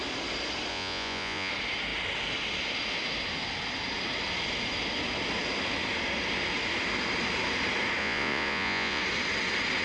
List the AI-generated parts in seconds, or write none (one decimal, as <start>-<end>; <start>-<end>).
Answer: 0.7-1.5; 8.0-9.0